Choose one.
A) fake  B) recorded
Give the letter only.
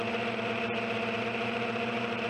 B